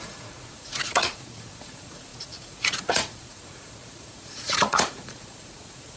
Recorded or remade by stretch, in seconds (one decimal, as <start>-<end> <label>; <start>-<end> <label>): 0.0-6.0 remade